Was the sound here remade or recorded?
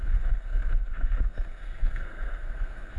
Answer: remade